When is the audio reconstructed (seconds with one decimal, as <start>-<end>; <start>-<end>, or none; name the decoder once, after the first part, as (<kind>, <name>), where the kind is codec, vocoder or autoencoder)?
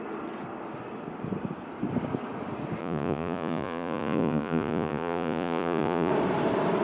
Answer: 2.8-6.1 (vocoder, Vocos)